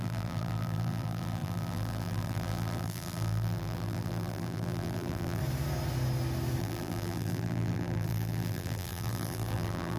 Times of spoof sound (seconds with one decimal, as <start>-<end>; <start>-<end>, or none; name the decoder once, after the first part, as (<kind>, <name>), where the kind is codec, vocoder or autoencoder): 0.0-5.4 (vocoder, BigVGAN v2); 6.6-10.0